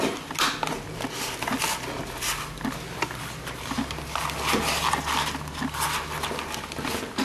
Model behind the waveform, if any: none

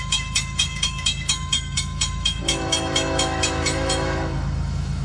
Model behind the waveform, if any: autoencoder, DAC-VAE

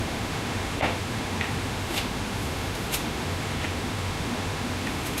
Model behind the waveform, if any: autoencoder, DAC-VAE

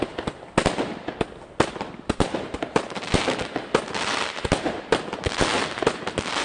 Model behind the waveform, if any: none